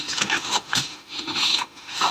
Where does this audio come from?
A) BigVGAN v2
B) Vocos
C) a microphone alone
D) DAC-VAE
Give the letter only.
D